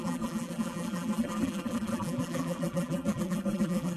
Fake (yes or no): yes